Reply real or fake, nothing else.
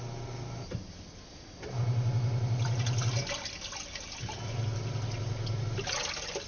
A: real